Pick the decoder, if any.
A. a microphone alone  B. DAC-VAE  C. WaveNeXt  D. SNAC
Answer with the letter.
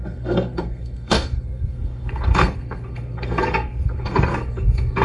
D